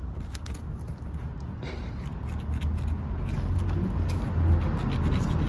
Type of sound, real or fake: real